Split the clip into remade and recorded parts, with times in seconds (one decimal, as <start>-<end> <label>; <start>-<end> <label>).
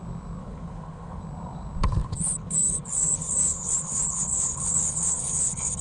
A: 0.0-0.4 recorded; 0.4-1.2 remade; 1.2-2.0 recorded; 2.0-5.8 remade